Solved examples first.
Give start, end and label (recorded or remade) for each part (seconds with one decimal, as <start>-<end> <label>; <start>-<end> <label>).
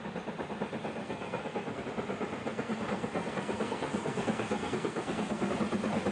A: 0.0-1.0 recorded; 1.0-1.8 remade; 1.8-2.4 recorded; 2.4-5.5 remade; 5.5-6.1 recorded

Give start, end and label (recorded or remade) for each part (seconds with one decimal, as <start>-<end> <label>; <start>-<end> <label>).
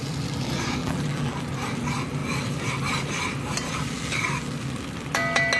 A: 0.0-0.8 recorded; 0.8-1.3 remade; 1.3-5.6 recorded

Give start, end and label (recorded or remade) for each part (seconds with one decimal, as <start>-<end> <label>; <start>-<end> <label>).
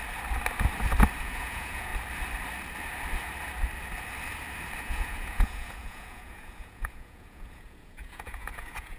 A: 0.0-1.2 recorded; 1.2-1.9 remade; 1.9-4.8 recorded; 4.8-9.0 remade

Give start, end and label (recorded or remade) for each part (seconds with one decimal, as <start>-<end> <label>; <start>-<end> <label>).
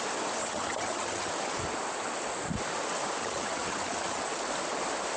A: 0.0-0.4 recorded; 0.4-1.3 remade; 1.3-3.2 recorded; 3.2-4.2 remade; 4.2-5.2 recorded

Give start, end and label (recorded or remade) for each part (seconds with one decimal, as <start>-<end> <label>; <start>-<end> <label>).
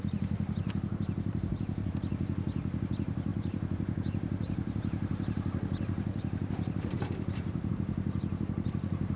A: 0.0-0.6 recorded; 0.6-1.9 remade; 1.9-3.3 recorded; 3.3-7.7 remade; 7.7-9.2 recorded